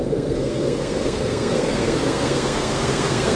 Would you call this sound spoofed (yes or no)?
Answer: yes